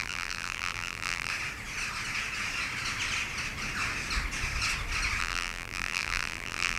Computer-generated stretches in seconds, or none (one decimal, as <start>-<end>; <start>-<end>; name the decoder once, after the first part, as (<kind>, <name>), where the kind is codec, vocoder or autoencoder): 0.0-1.3 (vocoder, BigVGAN v2); 5.2-6.8